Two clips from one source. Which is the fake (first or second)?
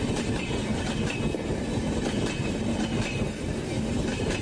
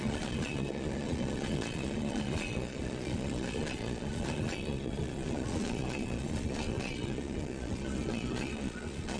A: second